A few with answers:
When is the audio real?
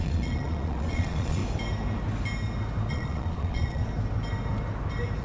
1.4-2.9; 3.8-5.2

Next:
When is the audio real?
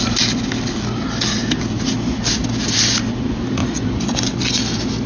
0.0-3.6; 4.6-5.1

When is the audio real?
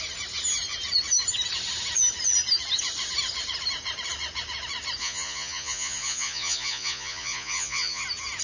0.0-5.0; 8.0-8.4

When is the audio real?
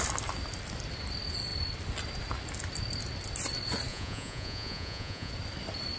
0.0-3.9; 5.3-6.0